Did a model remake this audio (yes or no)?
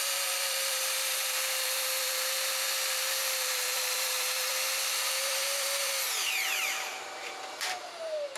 yes